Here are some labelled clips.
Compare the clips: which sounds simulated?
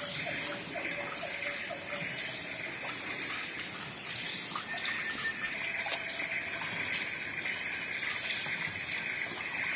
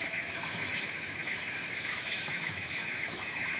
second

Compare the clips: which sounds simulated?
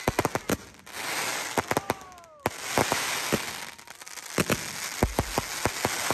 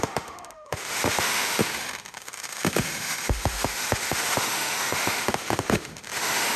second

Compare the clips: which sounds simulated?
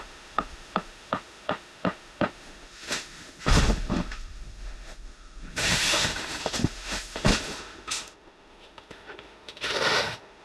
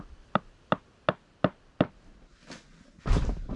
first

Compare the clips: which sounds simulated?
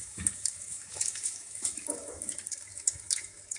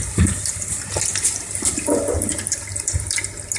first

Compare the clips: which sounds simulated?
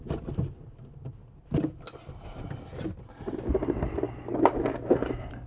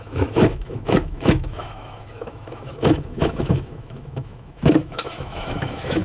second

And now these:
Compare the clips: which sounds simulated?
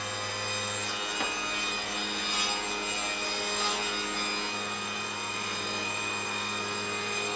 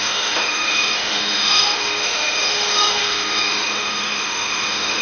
second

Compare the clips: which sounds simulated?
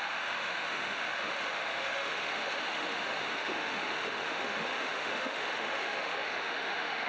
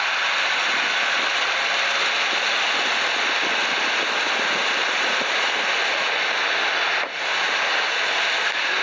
first